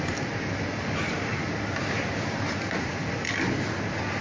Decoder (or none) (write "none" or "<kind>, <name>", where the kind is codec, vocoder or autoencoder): none